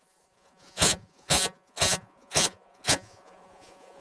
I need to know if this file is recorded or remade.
remade